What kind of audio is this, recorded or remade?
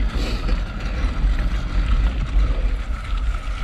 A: recorded